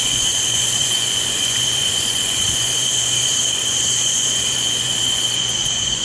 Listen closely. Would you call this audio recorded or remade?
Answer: remade